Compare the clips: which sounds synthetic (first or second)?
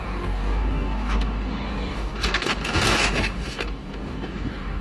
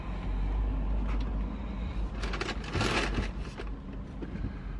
first